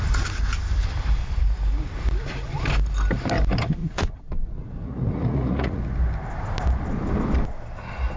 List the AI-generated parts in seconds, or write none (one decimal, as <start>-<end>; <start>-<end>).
3.8-5.8